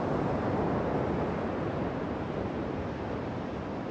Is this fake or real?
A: real